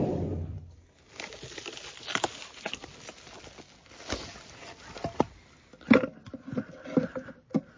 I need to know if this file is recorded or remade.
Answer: recorded